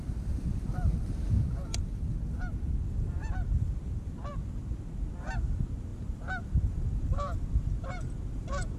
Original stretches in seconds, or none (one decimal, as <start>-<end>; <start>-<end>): 0.9-4.3